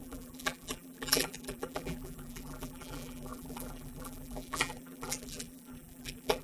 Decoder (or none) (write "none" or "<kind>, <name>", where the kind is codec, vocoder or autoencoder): vocoder, BigVGAN v2